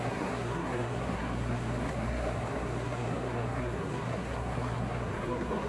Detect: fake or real fake